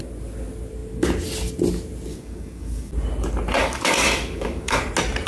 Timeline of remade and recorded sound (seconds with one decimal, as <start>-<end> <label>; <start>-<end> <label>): 0.0-2.1 recorded; 2.1-2.9 remade; 2.9-3.6 recorded; 3.6-4.8 remade; 4.8-5.3 recorded